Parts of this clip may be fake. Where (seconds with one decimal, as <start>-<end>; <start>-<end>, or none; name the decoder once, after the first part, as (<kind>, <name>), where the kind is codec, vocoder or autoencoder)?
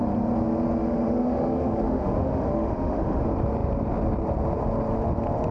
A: 0.8-3.2 (autoencoder, DAC-VAE)